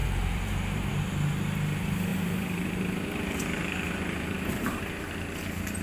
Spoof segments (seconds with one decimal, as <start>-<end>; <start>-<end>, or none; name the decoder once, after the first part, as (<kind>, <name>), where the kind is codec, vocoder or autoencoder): 0.0-0.9 (vocoder, BigVGAN v2); 2.1-4.8